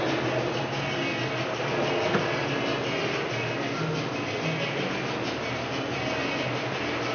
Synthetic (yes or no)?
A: no